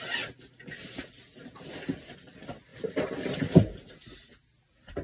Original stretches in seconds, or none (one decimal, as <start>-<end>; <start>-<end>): 0.0-2.7; 3.9-5.0